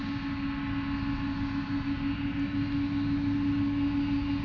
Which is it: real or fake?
real